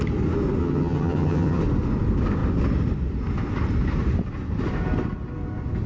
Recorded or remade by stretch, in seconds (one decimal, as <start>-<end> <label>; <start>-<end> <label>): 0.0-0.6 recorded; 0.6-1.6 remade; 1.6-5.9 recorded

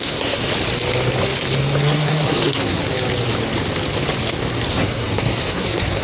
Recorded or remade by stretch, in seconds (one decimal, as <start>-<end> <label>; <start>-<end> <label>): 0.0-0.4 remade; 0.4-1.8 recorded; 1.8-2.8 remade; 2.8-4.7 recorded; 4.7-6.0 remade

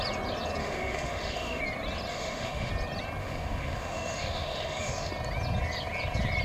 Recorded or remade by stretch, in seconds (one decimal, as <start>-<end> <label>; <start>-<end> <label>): 0.0-0.6 recorded; 0.6-1.6 remade; 1.6-2.1 recorded; 2.1-2.7 remade; 2.7-3.2 recorded; 3.2-5.1 remade; 5.1-6.4 recorded

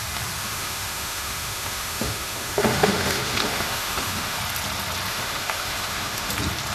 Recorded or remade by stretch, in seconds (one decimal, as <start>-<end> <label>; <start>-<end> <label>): 0.0-0.4 recorded; 0.4-4.4 remade; 4.4-5.1 recorded; 5.1-6.3 remade; 6.3-6.7 recorded